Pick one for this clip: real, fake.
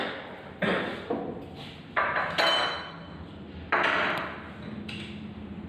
fake